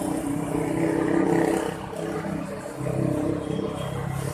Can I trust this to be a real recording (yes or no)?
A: yes